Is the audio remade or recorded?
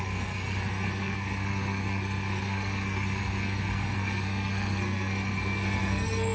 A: remade